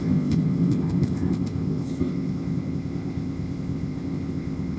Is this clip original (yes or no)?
no